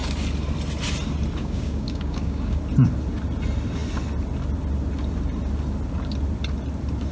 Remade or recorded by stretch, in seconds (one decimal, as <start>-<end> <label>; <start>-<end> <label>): 0.0-1.4 recorded; 1.4-2.6 remade; 2.6-7.1 recorded